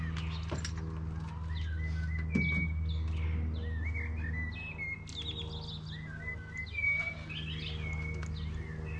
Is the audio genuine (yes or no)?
yes